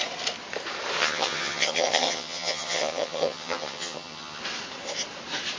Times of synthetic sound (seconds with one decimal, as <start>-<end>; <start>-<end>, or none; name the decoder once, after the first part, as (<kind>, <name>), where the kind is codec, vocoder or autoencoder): 1.0-4.4 (vocoder, HiFi-GAN)